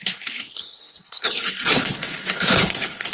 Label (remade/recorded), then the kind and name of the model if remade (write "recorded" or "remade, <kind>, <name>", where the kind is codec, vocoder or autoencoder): remade, codec, HILCodec